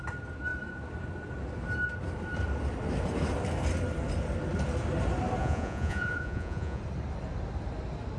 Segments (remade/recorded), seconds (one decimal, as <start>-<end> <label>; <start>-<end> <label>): 0.0-5.4 recorded; 5.4-6.8 remade; 6.8-8.2 recorded